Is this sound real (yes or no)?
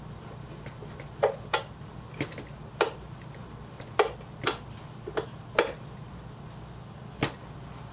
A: yes